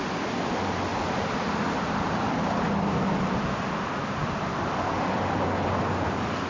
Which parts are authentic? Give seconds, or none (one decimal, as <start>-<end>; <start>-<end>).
0.0-6.5